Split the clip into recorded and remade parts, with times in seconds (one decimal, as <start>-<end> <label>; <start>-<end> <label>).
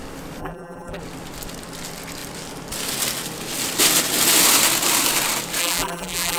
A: 0.0-0.4 recorded; 0.4-1.0 remade; 1.0-5.6 recorded; 5.6-6.4 remade